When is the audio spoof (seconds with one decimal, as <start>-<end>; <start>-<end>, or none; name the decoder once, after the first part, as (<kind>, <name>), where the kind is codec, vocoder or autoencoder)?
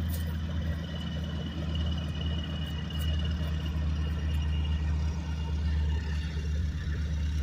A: 6.6-7.4 (vocoder, BigVGAN v2)